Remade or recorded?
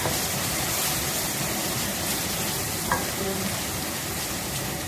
recorded